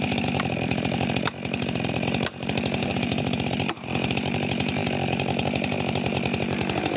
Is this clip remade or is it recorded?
remade